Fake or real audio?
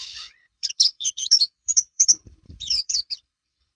fake